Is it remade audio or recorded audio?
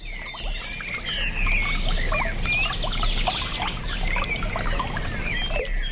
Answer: recorded